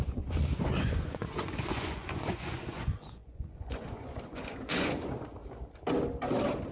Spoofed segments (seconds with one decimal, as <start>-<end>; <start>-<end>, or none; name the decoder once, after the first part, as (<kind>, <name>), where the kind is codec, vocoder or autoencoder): 0.0-5.4 (vocoder, Vocos)